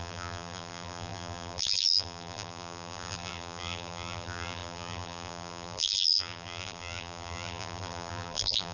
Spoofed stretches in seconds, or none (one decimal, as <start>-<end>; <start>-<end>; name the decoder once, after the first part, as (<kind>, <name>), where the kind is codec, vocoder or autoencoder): 0.0-8.7 (vocoder, BigVGAN v2)